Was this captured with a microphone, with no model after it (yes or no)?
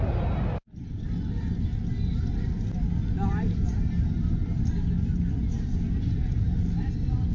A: yes